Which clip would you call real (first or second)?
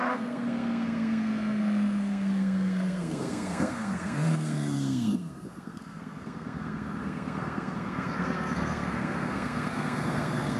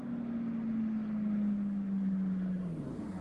second